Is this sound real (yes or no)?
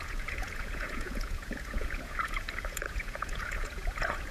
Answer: no